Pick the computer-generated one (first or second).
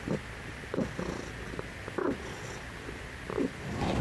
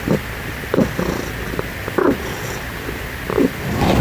second